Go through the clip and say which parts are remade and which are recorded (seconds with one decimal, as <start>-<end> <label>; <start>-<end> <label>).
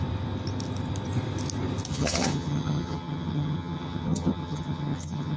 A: 0.0-1.9 recorded; 1.9-5.4 remade